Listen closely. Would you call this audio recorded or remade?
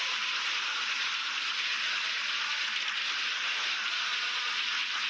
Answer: recorded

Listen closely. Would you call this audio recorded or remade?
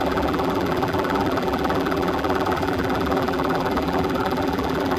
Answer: remade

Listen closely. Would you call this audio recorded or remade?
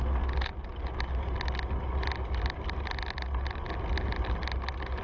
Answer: recorded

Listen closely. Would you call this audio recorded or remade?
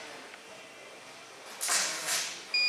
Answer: recorded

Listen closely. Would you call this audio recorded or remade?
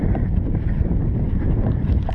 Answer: remade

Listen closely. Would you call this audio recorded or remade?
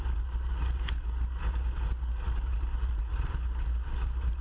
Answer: recorded